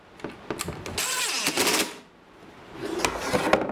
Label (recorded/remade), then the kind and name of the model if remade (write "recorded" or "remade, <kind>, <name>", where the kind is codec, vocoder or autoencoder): recorded